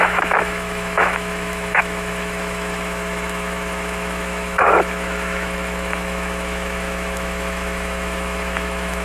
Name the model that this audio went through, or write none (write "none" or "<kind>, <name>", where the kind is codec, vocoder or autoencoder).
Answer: autoencoder, DAC-VAE